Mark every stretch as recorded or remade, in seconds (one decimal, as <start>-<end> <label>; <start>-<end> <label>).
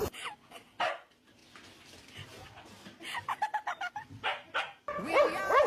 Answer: 0.0-5.7 recorded